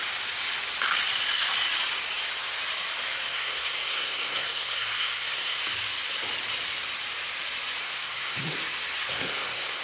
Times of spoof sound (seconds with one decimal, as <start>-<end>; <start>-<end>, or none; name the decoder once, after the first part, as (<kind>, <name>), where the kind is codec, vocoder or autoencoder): 3.3-5.6 (codec, SNAC); 7.8-8.4; 9.1-9.8